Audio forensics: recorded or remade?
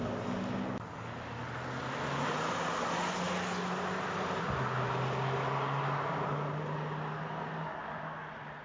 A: recorded